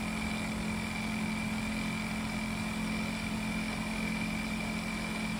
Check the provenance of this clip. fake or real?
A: real